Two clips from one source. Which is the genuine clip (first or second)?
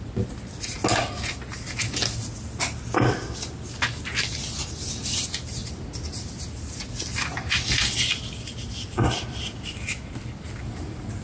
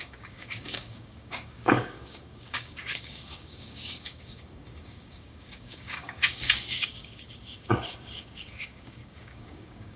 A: first